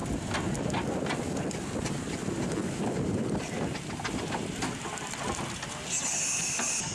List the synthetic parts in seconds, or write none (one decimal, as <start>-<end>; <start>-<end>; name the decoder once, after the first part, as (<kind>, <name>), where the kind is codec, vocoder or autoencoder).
none